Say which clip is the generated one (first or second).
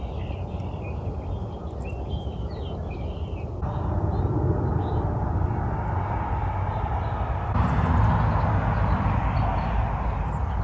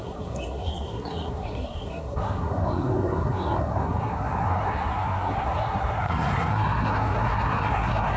second